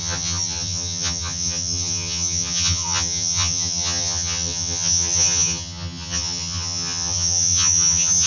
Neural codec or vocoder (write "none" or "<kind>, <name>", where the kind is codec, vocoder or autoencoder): vocoder, HiFi-GAN